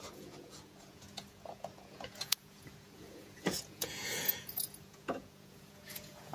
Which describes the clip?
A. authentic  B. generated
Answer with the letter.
B